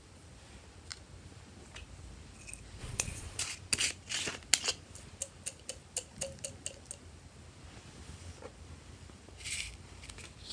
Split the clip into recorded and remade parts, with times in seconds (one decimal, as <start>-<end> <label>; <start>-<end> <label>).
0.0-2.8 recorded; 2.8-3.4 remade; 3.4-10.5 recorded